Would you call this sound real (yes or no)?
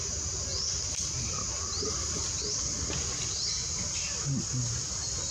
yes